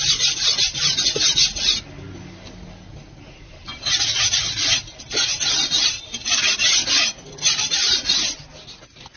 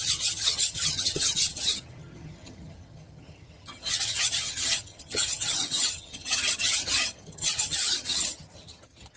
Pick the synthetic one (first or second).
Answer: second